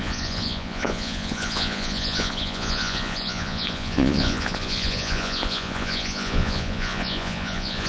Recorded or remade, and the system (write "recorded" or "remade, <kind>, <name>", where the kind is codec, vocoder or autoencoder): remade, vocoder, Vocos